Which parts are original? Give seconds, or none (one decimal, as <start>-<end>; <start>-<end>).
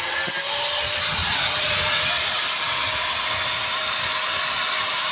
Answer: 0.0-1.2; 2.0-5.1